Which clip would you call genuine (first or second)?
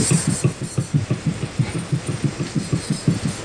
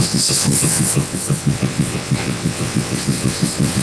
first